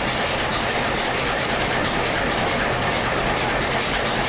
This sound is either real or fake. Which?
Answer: real